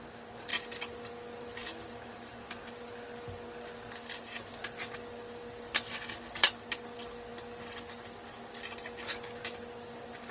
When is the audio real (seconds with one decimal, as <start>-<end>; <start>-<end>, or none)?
0.0-10.3